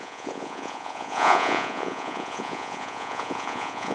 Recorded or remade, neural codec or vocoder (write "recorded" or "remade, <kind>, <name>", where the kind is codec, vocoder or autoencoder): remade, vocoder, Vocos